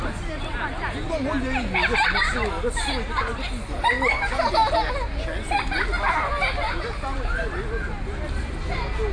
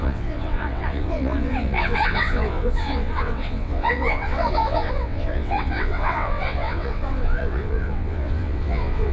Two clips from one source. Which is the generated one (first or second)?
second